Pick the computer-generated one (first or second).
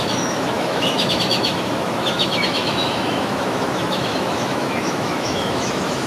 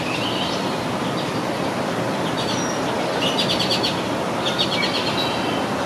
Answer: first